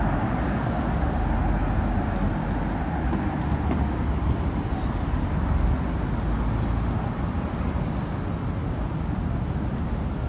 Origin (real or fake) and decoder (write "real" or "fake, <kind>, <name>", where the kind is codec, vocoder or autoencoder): real